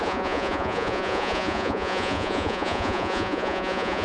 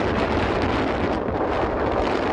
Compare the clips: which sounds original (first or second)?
second